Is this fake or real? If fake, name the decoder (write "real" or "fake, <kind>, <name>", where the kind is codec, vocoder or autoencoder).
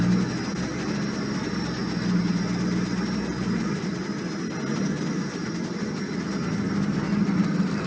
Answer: real